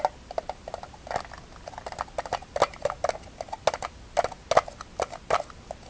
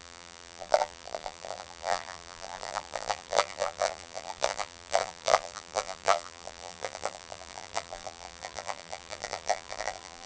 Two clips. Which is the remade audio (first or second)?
second